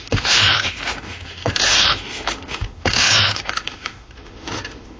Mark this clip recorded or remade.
remade